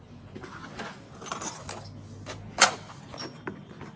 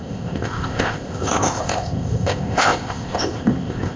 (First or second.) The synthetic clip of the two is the second